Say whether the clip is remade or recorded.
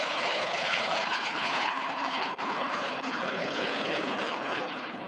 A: remade